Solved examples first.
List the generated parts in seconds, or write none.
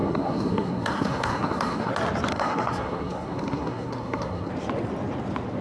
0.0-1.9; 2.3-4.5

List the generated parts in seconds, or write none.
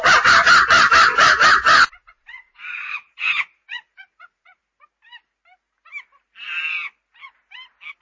1.9-4.6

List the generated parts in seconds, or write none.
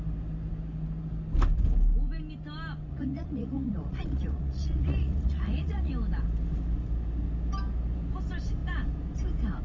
2.9-5.9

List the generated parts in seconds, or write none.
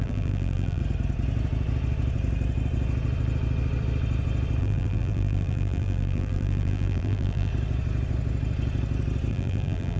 0.0-0.8; 4.6-7.5; 9.3-10.0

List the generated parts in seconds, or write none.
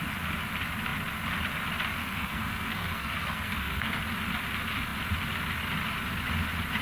2.0-4.0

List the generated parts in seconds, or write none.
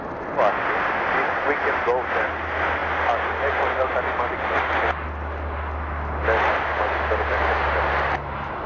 none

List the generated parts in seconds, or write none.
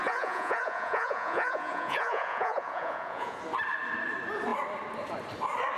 0.0-3.4